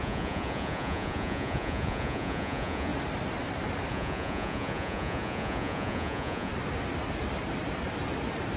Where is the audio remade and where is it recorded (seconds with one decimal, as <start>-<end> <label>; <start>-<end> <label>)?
0.0-2.9 remade; 2.9-3.9 recorded; 3.9-6.5 remade; 6.5-8.6 recorded

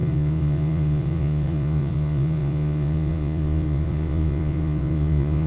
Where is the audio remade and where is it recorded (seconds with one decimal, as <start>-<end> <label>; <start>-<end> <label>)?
0.0-5.5 remade

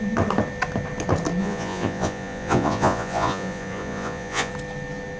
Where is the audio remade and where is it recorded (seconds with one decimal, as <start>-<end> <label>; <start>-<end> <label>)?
0.0-1.4 recorded; 1.4-4.5 remade; 4.5-5.2 recorded

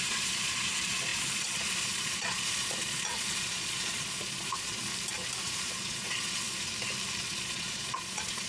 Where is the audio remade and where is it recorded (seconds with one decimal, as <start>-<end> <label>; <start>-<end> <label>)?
0.0-4.9 remade; 4.9-5.4 recorded; 5.4-6.7 remade; 6.7-7.2 recorded; 7.2-8.5 remade

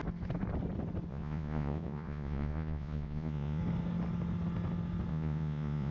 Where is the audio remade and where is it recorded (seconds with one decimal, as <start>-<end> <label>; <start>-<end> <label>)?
0.0-1.1 recorded; 1.1-3.6 remade; 3.6-5.1 recorded; 5.1-5.9 remade

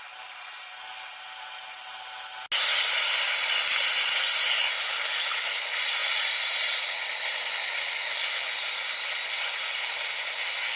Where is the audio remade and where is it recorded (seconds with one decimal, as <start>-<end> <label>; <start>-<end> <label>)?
0.0-10.8 recorded

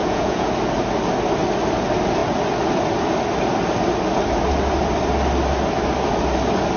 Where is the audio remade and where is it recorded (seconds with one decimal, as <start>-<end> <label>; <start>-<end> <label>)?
0.0-0.5 remade; 0.5-6.8 recorded